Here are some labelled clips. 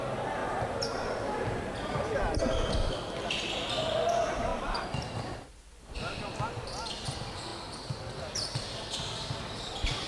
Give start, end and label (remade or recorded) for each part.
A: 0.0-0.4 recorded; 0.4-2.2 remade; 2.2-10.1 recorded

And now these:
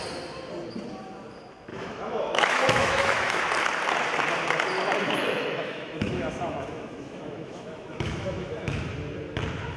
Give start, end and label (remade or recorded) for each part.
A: 0.0-1.7 recorded; 1.7-3.4 remade; 3.4-5.0 recorded; 5.0-8.9 remade; 8.9-9.8 recorded

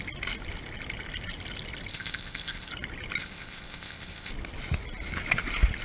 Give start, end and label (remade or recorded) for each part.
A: 0.0-1.9 recorded; 1.9-2.7 remade; 2.7-3.2 recorded; 3.2-4.3 remade; 4.3-5.8 recorded